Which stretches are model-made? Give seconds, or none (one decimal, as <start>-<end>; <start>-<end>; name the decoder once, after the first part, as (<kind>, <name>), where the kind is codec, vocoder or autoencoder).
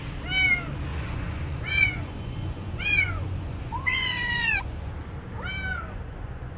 0.9-4.9 (vocoder, Vocos); 5.7-6.6